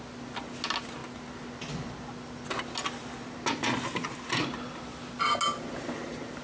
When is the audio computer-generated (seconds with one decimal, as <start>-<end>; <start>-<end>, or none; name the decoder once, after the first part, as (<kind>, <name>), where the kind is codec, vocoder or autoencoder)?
none